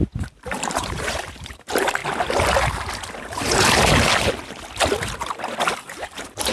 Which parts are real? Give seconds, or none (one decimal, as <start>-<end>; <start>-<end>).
2.0-5.7